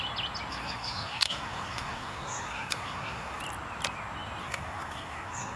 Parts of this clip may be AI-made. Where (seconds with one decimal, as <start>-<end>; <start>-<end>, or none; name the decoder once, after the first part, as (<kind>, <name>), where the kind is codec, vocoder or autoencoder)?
0.5-3.4 (codec, SNAC); 4.4-5.6